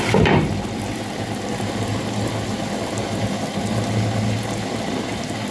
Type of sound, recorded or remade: recorded